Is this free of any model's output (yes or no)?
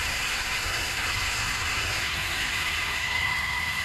no